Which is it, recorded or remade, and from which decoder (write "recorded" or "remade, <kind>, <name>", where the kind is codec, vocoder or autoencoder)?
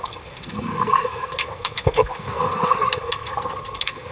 remade, codec, SNAC